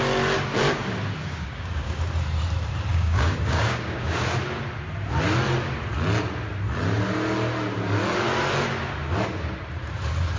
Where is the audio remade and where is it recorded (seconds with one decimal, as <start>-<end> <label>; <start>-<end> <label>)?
0.0-1.2 recorded; 1.2-2.0 remade; 2.0-2.9 recorded; 2.9-4.2 remade; 4.2-10.4 recorded